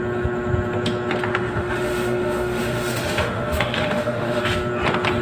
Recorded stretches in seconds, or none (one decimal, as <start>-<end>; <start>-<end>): 0.0-1.3; 4.4-5.2